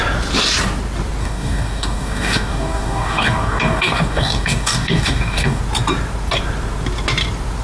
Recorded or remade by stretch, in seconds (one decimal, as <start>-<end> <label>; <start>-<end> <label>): 0.0-1.2 recorded; 1.2-5.6 remade; 5.6-7.6 recorded